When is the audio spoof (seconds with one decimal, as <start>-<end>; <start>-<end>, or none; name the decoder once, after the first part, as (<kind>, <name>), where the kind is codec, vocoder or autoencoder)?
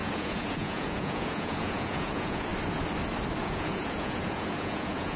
0.0-2.5 (vocoder, Vocos); 3.4-5.2